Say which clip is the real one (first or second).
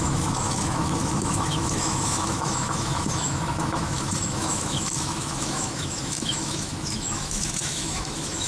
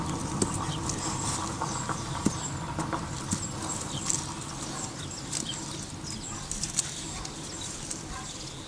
second